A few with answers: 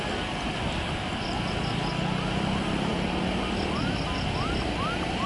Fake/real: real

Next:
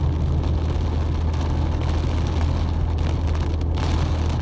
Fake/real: real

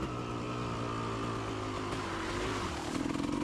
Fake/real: real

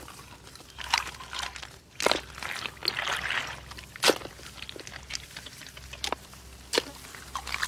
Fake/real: real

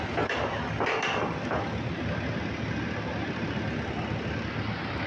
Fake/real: real